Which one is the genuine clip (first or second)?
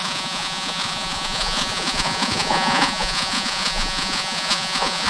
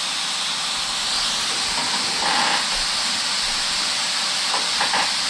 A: second